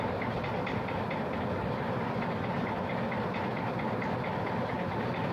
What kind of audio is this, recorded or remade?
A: recorded